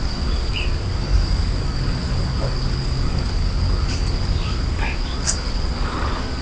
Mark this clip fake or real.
fake